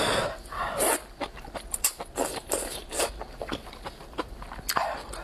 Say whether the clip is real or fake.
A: real